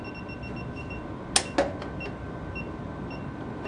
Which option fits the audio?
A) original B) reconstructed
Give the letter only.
A